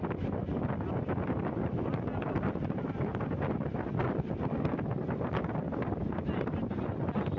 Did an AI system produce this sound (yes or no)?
no